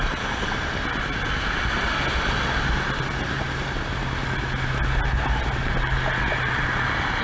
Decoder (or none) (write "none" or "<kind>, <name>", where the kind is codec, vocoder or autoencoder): none